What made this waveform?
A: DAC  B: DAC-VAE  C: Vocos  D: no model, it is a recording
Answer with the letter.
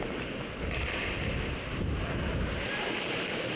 D